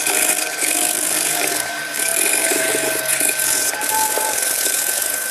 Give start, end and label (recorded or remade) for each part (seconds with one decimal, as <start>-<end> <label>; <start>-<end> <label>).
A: 0.0-5.3 remade